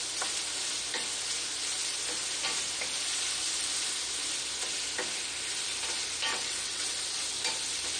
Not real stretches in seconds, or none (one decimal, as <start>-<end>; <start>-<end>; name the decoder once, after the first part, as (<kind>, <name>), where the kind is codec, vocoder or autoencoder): 6.3-6.9 (vocoder, WaveNeXt)